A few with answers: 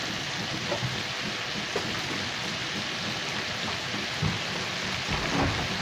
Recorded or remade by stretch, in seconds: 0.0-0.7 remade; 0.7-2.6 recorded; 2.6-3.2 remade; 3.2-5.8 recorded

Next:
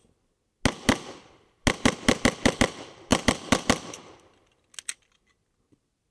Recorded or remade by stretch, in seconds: 0.0-3.1 recorded; 3.1-4.5 remade; 4.5-6.1 recorded

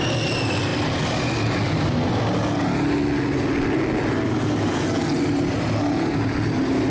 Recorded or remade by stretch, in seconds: 0.0-6.9 recorded

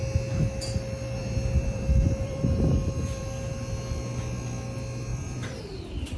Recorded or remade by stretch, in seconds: 0.0-1.2 recorded; 1.2-3.2 remade; 3.2-5.1 recorded; 5.1-5.6 remade; 5.6-6.2 recorded

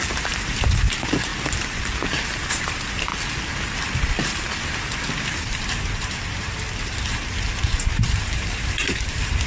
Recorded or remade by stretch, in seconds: 0.0-1.3 remade; 1.3-2.5 recorded; 2.5-3.1 remade; 3.1-7.4 recorded; 7.4-9.5 remade

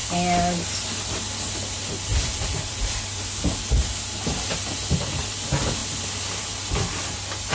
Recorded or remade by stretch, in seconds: 0.0-2.1 recorded; 2.1-3.2 remade; 3.2-7.5 recorded

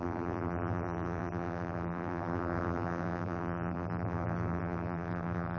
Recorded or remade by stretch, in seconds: 0.0-5.6 remade

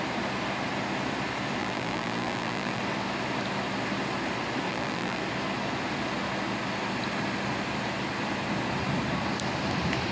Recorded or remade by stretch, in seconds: 0.0-1.6 recorded; 1.6-2.8 remade; 2.8-4.7 recorded; 4.7-5.2 remade; 5.2-10.1 recorded